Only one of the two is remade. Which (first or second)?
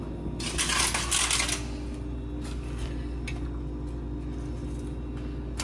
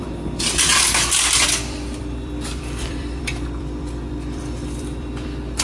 second